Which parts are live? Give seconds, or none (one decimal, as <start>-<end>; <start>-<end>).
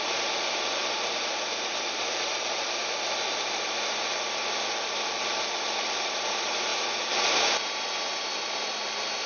0.0-9.3